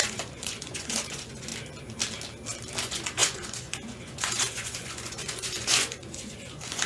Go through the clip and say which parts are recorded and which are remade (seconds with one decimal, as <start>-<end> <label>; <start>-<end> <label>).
0.0-1.5 remade; 1.5-2.8 recorded; 2.8-6.9 remade